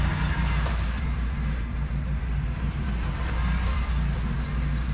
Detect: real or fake real